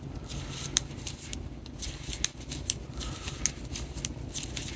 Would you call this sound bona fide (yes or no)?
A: yes